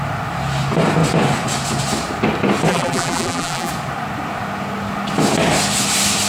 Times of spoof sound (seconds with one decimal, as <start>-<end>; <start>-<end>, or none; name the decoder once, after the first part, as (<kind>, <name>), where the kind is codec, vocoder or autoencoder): 2.7-3.7 (vocoder, BigVGAN v2)